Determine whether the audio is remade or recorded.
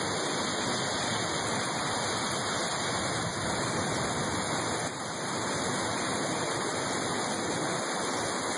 recorded